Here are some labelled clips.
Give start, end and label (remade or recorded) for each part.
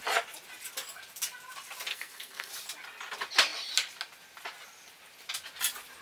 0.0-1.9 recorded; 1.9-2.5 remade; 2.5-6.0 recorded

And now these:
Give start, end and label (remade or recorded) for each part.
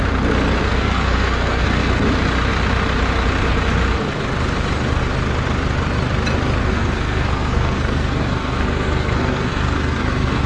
0.0-0.7 recorded; 0.7-2.0 remade; 2.0-6.6 recorded; 6.6-10.5 remade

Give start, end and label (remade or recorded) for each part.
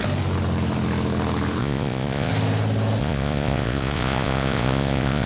0.0-1.6 recorded; 1.6-2.3 remade; 2.3-3.0 recorded; 3.0-5.3 remade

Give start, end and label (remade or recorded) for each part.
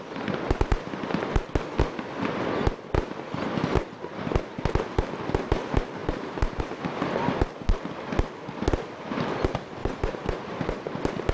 0.0-6.0 recorded; 6.0-6.6 remade; 6.6-9.8 recorded; 9.8-10.9 remade; 10.9-11.3 recorded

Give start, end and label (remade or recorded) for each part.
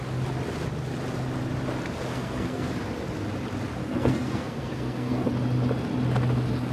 0.0-2.1 recorded; 2.1-2.7 remade; 2.7-3.8 recorded; 3.8-5.3 remade; 5.3-6.7 recorded